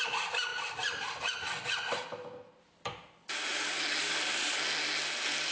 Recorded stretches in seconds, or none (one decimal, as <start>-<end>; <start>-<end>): 0.0-5.5